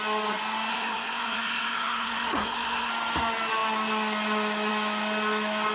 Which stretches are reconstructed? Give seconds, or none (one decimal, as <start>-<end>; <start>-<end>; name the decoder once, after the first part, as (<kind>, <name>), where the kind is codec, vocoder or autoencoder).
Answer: 0.7-2.9 (codec, SNAC)

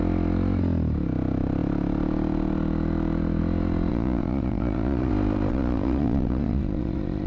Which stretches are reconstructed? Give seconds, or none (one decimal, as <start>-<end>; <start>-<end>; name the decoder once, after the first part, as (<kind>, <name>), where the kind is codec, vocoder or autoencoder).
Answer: 3.9-5.1 (vocoder, Vocos); 5.5-7.3

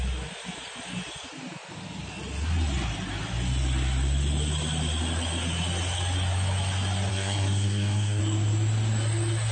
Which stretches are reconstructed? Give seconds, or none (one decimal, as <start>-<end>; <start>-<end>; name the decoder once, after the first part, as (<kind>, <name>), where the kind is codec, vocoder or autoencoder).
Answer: 7.1-8.2 (codec, SNAC)

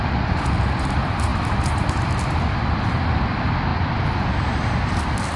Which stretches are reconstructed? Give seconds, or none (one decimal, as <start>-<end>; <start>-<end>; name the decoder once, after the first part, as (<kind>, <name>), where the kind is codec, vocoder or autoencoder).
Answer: 0.0-5.4 (vocoder, BigVGAN v2)

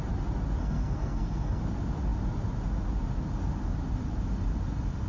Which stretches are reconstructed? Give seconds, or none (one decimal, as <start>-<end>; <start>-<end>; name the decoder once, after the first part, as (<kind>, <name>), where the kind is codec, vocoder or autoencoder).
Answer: 0.6-1.6 (codec, SNAC)